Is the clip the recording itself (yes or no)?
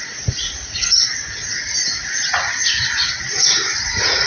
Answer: no